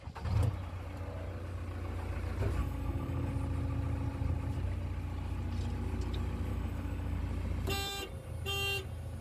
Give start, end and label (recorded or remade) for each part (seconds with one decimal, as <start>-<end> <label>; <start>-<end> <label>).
0.0-2.6 recorded; 2.6-3.3 remade; 3.3-6.5 recorded; 6.5-7.2 remade; 7.2-9.2 recorded